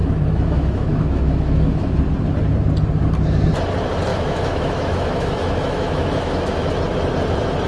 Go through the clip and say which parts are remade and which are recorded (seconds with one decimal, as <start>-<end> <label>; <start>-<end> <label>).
0.0-2.0 remade; 2.0-4.1 recorded; 4.1-6.7 remade; 6.7-7.7 recorded